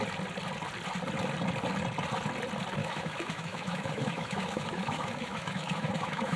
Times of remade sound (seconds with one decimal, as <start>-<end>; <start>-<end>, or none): 2.8-6.4